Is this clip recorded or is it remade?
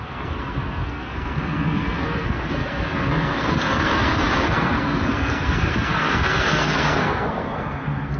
remade